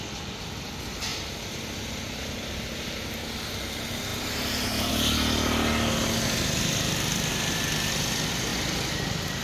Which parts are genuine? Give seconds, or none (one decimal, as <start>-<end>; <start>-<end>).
0.0-1.1; 2.5-9.4

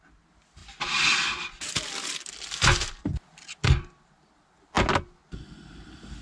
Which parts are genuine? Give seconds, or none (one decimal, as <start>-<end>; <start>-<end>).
0.0-6.2

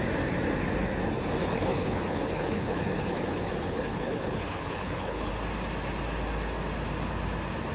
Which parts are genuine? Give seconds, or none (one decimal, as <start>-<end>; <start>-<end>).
0.0-1.4; 5.3-7.7

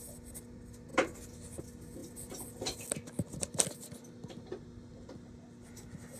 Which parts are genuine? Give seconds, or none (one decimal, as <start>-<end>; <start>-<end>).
0.0-6.2

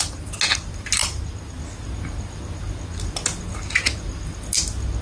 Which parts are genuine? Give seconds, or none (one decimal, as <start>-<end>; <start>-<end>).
0.0-5.0

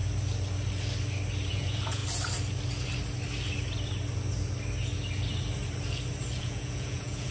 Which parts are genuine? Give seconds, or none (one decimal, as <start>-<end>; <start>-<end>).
0.0-1.5; 2.0-6.4

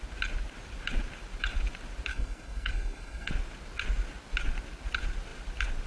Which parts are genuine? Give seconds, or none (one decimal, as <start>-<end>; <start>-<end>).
0.0-2.1; 3.3-5.9

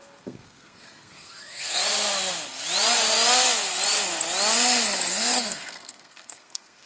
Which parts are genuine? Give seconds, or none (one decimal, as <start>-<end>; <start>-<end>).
1.8-5.1